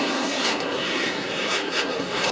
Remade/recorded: remade